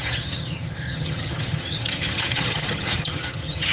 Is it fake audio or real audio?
fake